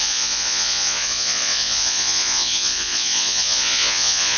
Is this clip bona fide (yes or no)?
no